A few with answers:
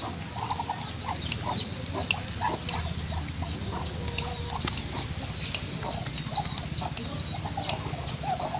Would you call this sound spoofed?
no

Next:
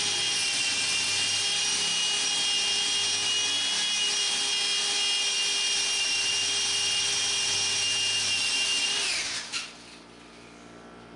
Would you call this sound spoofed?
no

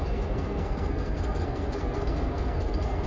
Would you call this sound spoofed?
yes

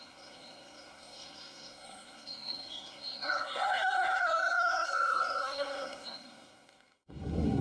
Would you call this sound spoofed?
yes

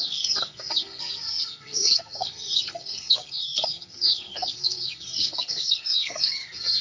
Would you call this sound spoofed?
yes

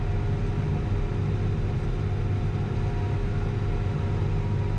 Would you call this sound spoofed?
no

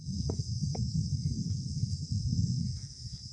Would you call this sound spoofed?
yes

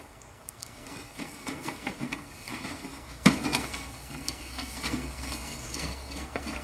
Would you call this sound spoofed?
yes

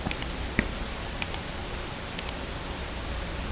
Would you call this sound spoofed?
no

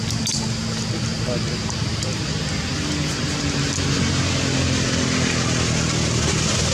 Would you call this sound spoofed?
no